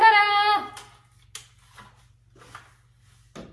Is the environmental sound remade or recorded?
recorded